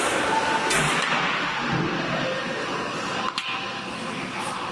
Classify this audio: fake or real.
real